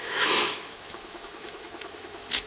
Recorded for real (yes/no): no